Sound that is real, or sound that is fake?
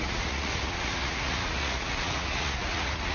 fake